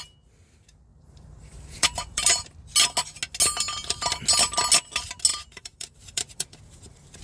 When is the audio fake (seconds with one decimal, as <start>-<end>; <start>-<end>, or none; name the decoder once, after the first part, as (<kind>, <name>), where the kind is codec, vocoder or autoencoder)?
0.9-2.5 (vocoder, BigVGAN v2); 5.3-7.2